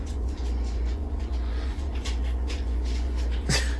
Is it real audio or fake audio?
fake